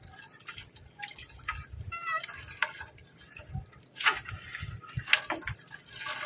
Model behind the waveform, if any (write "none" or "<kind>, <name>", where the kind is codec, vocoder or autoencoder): none